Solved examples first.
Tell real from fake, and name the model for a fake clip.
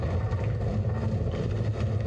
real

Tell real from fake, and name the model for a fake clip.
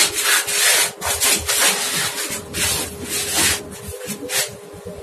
real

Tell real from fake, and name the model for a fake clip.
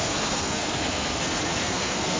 fake, codec, SNAC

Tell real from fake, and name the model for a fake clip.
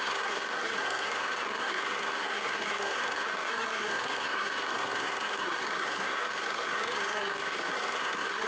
fake, codec, SNAC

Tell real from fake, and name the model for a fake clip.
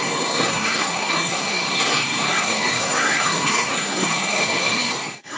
fake, codec, SNAC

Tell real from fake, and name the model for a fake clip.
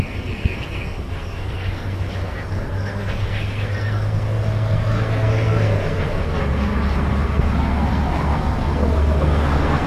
fake, codec, SNAC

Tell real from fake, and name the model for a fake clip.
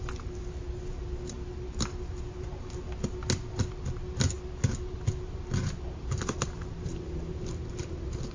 real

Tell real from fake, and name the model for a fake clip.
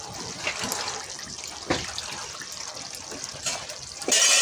real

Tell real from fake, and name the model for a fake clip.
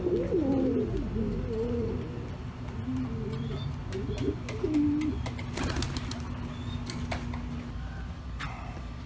real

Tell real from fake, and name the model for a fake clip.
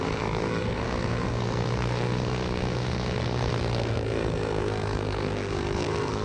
fake, codec, SNAC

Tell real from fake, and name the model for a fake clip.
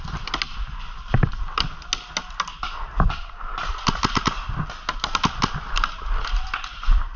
real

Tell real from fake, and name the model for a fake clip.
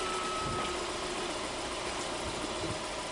real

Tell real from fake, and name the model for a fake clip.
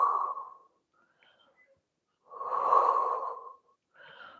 real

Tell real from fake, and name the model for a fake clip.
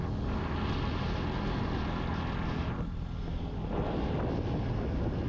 real